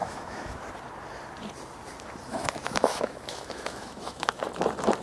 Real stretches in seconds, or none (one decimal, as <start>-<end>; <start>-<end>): 0.6-2.3; 4.4-5.0